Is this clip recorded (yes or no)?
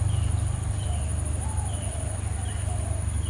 yes